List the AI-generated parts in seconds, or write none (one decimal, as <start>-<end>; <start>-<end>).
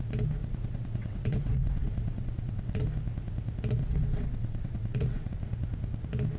0.4-2.8; 3.8-5.3